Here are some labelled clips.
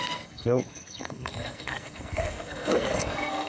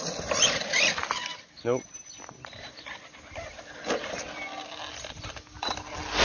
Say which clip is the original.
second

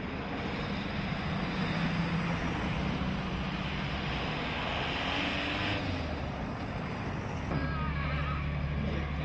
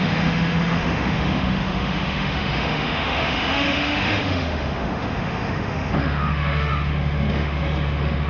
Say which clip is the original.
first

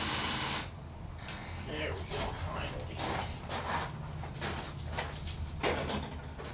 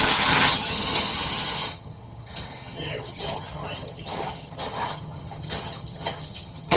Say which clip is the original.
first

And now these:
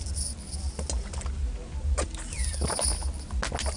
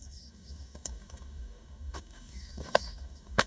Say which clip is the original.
first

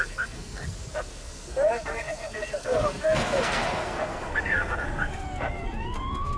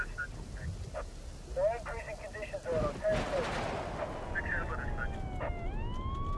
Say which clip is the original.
second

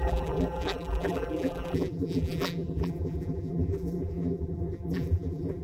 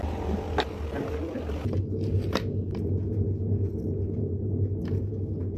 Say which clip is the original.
second